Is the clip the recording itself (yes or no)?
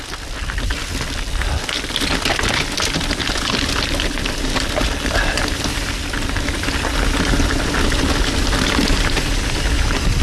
yes